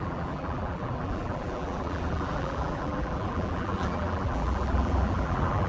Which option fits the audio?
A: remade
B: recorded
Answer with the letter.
A